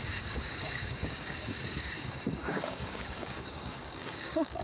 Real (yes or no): no